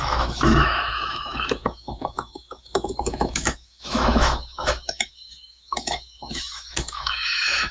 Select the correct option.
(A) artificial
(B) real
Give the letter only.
A